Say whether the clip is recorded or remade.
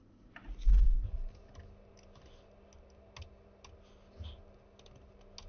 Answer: recorded